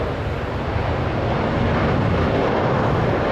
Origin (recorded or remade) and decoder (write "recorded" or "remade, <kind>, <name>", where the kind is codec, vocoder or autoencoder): recorded